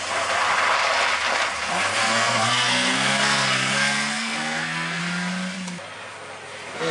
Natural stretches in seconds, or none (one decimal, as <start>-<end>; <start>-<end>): 0.0-2.0; 5.0-6.9